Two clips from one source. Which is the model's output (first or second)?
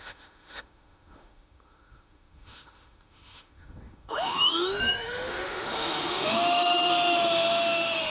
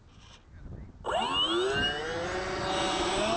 first